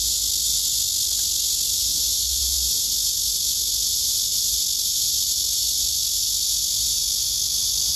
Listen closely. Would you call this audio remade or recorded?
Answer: recorded